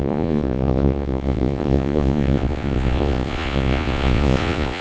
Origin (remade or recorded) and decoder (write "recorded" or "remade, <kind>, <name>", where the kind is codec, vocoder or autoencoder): remade, vocoder, Vocos